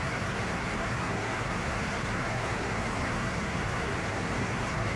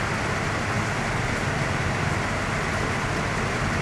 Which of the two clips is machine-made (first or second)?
first